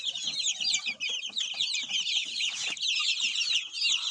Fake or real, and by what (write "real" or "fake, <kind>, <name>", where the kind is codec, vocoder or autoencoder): real